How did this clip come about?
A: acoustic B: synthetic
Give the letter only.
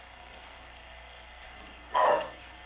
B